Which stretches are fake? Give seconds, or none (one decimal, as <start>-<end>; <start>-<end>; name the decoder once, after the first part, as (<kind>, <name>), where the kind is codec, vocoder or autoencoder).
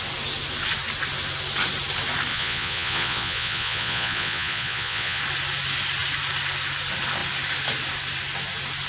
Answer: 2.3-5.2 (vocoder, Vocos)